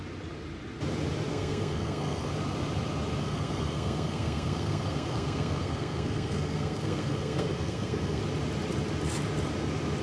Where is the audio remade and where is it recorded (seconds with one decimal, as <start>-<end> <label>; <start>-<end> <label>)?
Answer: 0.0-1.3 recorded; 1.3-2.3 remade; 2.3-3.2 recorded; 3.2-8.2 remade; 8.2-10.0 recorded